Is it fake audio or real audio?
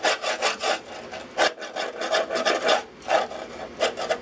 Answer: real